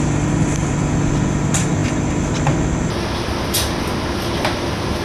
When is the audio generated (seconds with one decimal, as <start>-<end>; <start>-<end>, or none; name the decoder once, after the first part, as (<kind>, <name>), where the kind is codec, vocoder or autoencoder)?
none